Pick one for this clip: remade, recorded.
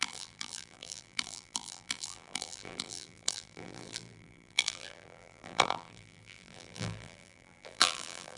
remade